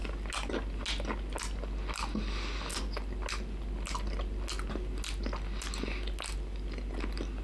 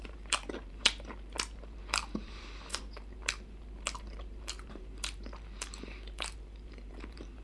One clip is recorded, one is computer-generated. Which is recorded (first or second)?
first